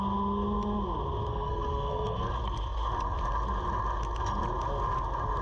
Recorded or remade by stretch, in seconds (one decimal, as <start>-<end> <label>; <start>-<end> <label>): 0.0-1.3 recorded; 1.3-2.3 remade; 2.3-5.4 recorded